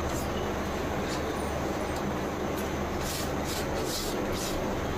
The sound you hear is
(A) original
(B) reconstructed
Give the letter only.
A